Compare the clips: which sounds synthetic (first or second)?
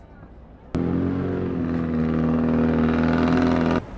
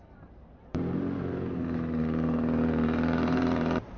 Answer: second